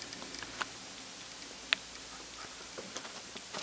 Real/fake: real